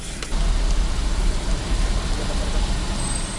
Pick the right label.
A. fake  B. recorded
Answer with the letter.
B